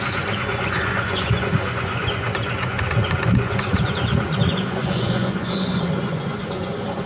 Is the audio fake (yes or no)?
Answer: yes